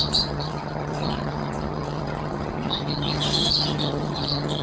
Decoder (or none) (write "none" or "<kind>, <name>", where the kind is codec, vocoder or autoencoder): vocoder, HiFi-GAN